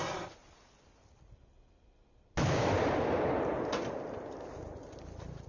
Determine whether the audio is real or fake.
real